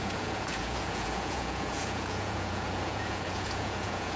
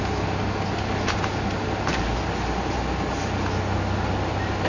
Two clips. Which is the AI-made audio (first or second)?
first